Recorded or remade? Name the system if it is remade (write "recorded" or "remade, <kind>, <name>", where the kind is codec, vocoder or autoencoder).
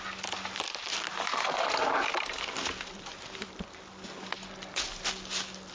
recorded